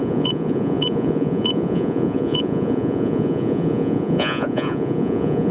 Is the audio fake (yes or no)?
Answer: yes